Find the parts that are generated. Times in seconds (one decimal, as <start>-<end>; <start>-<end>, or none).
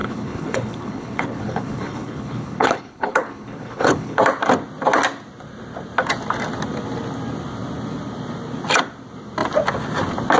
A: 0.0-4.2